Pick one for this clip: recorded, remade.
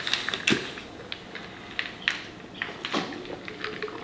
recorded